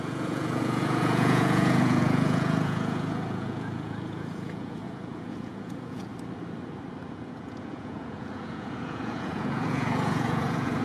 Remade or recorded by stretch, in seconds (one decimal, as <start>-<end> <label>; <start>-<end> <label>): 0.0-6.1 remade; 6.1-7.1 recorded; 7.1-10.8 remade